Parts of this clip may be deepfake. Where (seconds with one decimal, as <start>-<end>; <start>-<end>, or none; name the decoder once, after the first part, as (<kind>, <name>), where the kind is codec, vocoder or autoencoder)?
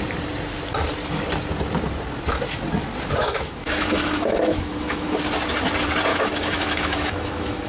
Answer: 3.2-5.1 (autoencoder, DAC-VAE); 6.1-7.7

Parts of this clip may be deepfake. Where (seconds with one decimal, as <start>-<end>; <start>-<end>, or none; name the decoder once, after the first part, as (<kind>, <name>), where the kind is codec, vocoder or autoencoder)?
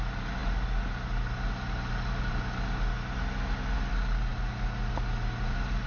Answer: none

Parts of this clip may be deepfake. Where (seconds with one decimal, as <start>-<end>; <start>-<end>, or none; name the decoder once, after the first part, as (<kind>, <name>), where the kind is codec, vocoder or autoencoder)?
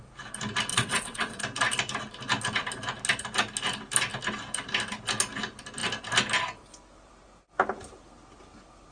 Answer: 0.7-1.4 (vocoder, WaveNeXt)